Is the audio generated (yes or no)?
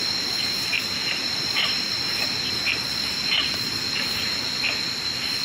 no